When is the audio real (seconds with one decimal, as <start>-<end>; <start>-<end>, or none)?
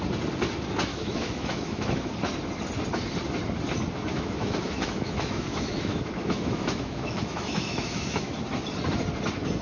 0.0-0.9; 2.1-4.1; 8.3-9.6